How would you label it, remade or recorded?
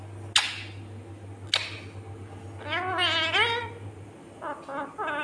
recorded